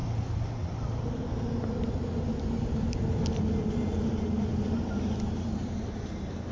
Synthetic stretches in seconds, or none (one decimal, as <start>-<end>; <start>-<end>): none